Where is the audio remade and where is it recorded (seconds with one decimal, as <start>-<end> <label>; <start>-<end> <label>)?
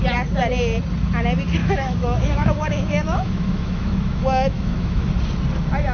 0.0-1.6 recorded; 1.6-5.1 remade; 5.1-5.9 recorded